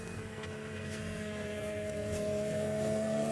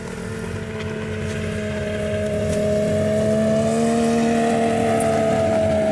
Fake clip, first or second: first